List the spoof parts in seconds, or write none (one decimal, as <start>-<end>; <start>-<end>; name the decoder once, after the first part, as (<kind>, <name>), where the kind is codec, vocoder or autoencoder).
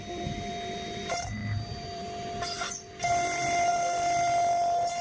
1.4-2.0 (vocoder, BigVGAN v2)